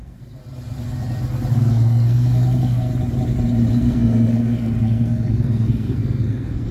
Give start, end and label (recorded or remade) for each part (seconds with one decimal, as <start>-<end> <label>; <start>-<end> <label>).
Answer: 0.0-0.4 remade; 0.4-1.5 recorded; 1.5-2.9 remade; 2.9-3.7 recorded; 3.7-6.7 remade

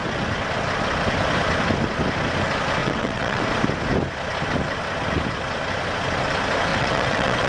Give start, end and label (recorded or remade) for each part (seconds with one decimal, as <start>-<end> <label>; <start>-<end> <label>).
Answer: 0.0-2.8 recorded; 2.8-3.4 remade; 3.4-6.7 recorded; 6.7-7.5 remade

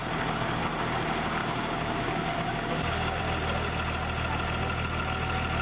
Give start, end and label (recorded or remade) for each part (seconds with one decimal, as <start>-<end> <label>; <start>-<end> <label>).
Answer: 0.0-1.4 recorded; 1.4-3.2 remade; 3.2-5.6 recorded

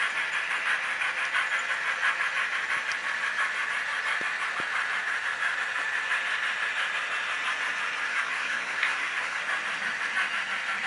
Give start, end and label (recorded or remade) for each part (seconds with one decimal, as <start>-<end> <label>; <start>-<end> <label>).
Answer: 0.0-8.1 recorded; 8.1-9.4 remade; 9.4-10.9 recorded

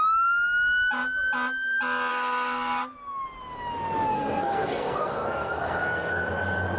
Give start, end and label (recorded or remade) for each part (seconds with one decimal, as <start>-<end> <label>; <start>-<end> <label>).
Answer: 0.0-2.1 recorded; 2.1-2.8 remade; 2.8-4.1 recorded; 4.1-6.3 remade; 6.3-6.8 recorded

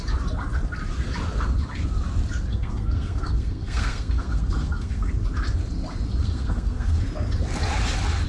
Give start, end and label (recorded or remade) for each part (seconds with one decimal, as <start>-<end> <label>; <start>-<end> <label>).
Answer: 0.0-2.5 recorded; 2.5-5.1 remade; 5.1-6.2 recorded; 6.2-7.0 remade; 7.0-8.3 recorded

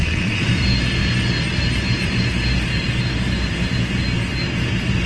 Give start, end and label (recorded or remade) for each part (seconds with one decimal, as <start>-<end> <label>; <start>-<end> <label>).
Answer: 0.0-0.5 remade; 0.5-5.1 recorded